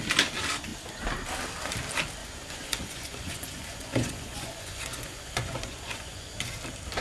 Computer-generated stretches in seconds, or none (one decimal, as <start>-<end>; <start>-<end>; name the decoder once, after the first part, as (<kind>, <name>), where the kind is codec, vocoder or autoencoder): 2.2-6.4 (vocoder, Vocos)